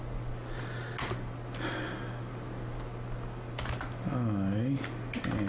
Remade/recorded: recorded